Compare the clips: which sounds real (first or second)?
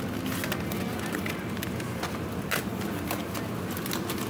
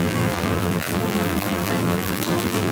first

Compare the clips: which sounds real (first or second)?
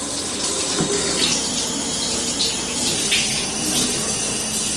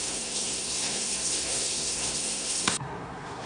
first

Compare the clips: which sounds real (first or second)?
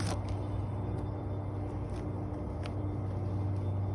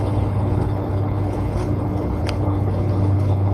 first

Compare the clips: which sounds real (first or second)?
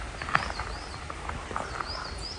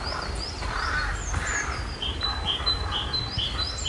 first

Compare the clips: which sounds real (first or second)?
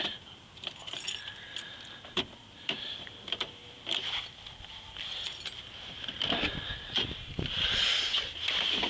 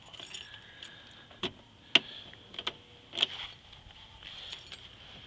second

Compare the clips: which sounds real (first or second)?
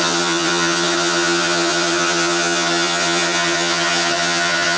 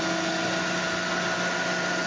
second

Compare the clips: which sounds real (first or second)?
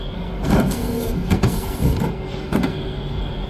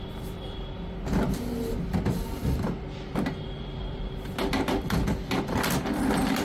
second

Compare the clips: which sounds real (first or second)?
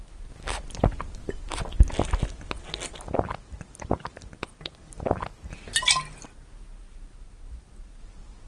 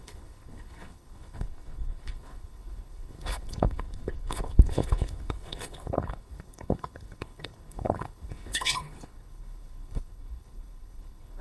first